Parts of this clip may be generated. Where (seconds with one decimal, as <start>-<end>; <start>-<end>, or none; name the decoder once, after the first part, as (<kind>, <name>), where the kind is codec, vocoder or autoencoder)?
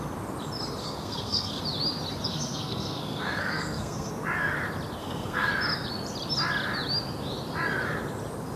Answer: 0.8-1.6 (codec, SNAC); 2.3-4.1; 5.0-5.5